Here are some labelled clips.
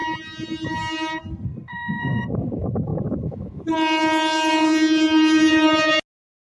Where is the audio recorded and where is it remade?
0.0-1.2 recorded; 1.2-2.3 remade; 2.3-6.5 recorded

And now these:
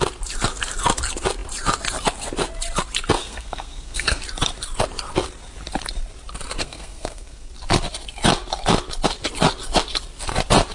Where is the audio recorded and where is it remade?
0.0-3.2 recorded; 3.2-4.2 remade; 4.2-6.6 recorded; 6.6-7.5 remade; 7.5-10.7 recorded

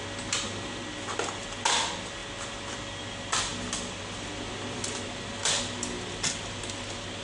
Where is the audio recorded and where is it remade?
0.0-7.2 recorded

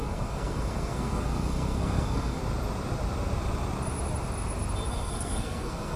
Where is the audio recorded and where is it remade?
0.0-2.4 remade; 2.4-4.9 recorded; 4.9-6.0 remade

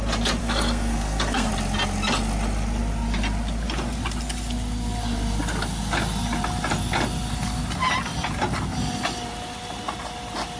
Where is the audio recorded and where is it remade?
0.0-0.4 recorded; 0.4-1.5 remade; 1.5-10.6 recorded

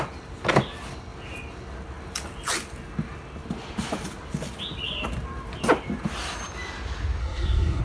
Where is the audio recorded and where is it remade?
0.0-7.2 recorded; 7.2-7.8 remade

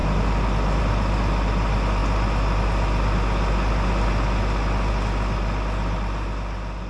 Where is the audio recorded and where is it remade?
0.0-6.9 recorded

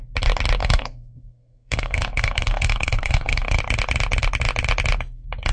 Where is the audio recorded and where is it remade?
0.0-0.6 recorded; 0.6-3.6 remade; 3.6-5.5 recorded